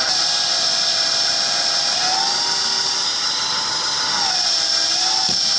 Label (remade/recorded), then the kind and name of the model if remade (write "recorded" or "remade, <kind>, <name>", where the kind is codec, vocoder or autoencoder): recorded